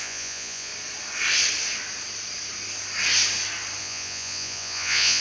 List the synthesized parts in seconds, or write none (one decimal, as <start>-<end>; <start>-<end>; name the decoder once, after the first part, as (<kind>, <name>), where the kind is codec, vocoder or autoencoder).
0.0-0.7 (vocoder, Vocos); 3.8-5.2

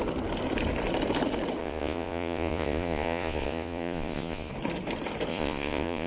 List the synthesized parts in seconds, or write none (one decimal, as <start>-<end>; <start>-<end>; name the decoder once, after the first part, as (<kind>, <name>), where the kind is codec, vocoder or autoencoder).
1.6-4.5 (vocoder, Vocos); 5.3-6.1

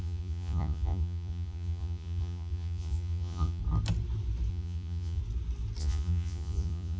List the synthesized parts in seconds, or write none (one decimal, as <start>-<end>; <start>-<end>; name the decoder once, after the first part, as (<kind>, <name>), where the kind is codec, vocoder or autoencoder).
0.0-3.6 (vocoder, Vocos); 4.5-5.2; 5.8-7.0

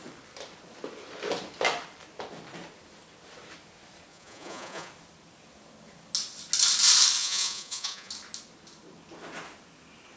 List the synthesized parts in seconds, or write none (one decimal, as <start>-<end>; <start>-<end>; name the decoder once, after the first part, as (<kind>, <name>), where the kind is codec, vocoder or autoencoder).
4.1-4.9 (vocoder, Vocos); 7.2-8.1